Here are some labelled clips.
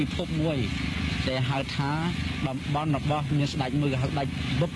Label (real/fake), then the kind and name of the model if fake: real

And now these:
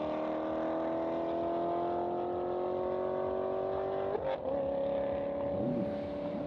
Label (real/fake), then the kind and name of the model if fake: real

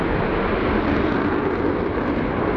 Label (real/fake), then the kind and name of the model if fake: real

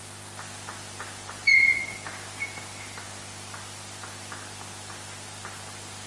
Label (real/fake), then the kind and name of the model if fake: real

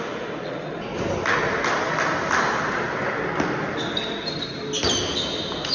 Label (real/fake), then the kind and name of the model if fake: real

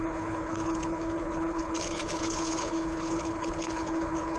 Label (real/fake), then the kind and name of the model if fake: fake, codec, HILCodec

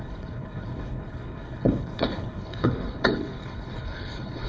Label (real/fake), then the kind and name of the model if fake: fake, codec, HILCodec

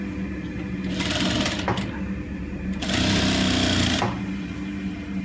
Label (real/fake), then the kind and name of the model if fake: real